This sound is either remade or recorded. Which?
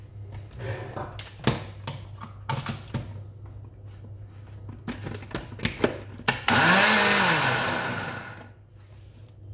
recorded